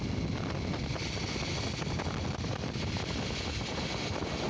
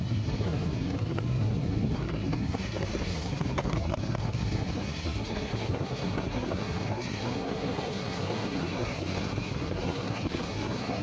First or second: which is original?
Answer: first